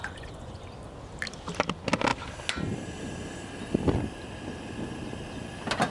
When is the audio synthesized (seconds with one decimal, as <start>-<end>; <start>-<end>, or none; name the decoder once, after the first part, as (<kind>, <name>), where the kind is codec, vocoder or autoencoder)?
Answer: 0.0-0.6 (vocoder, Vocos)